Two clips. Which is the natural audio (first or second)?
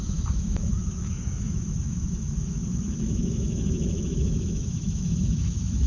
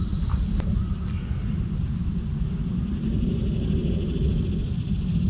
second